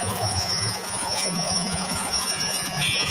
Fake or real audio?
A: fake